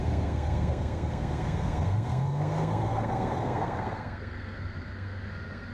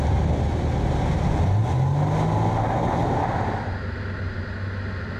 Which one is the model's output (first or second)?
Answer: first